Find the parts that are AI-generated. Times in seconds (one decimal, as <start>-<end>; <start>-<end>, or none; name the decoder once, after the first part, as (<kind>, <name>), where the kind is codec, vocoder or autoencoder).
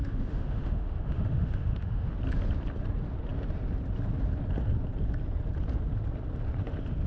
0.0-2.1 (autoencoder, DAC-VAE)